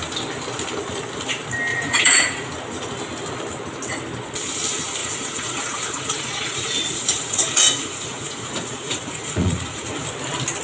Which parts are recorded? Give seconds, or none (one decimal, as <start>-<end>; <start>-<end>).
0.0-1.7; 2.5-5.0; 10.0-10.6